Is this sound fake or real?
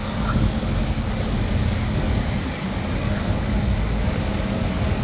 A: fake